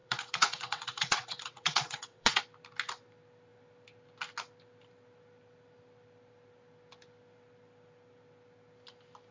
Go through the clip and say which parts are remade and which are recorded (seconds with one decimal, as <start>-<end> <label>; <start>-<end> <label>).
0.0-2.4 remade; 2.4-9.3 recorded